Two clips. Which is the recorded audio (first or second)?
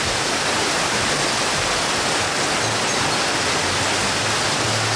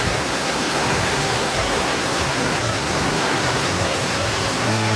first